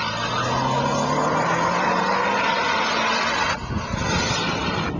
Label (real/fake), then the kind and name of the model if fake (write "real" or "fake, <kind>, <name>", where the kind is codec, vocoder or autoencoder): real